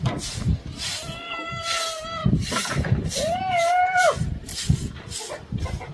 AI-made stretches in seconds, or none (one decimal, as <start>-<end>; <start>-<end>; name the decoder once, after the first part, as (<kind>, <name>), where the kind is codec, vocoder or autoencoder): 2.2-3.5 (vocoder, BigVGAN v2)